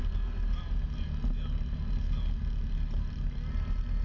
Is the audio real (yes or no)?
yes